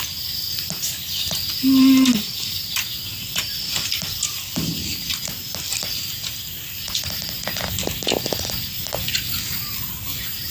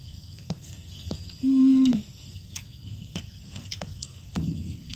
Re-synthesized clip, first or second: second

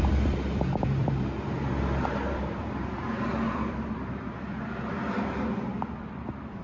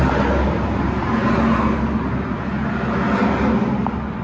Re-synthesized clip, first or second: first